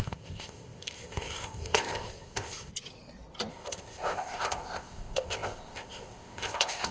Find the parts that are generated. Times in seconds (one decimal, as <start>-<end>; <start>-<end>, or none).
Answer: 0.0-2.7; 3.5-6.9